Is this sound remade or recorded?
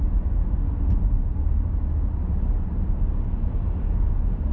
remade